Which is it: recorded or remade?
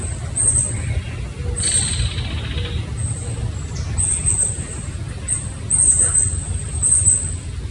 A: recorded